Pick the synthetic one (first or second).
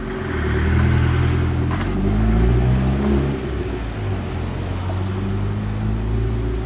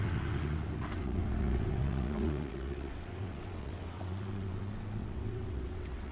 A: second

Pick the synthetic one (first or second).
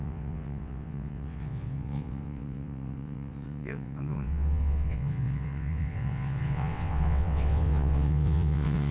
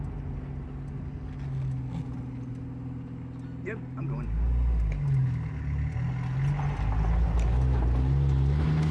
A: first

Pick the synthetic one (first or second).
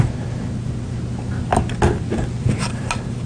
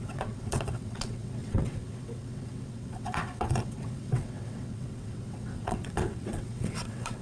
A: second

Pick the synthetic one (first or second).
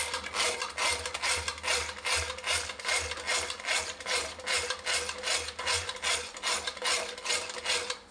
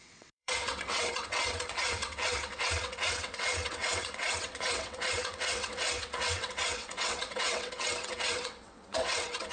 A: second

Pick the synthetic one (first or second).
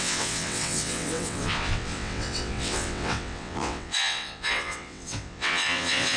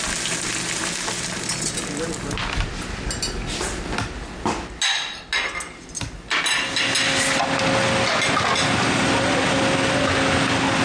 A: first